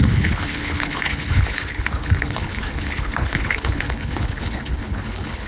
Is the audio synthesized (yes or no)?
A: yes